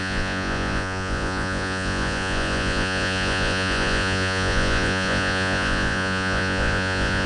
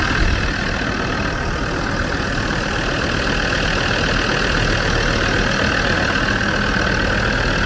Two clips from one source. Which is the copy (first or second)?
first